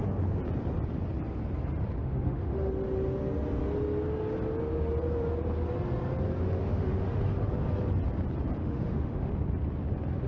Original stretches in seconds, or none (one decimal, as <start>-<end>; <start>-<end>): 0.0-2.0; 2.7-6.6; 7.2-8.6; 9.3-10.3